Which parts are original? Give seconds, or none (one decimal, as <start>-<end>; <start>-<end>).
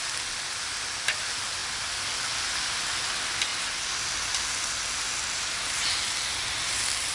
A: 0.0-7.1